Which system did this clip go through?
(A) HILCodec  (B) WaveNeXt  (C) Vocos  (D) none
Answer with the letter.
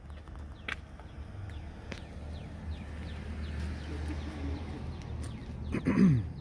D